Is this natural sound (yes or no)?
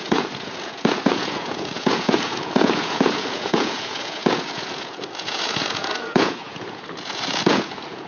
no